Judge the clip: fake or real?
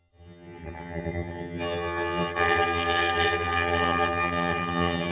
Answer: fake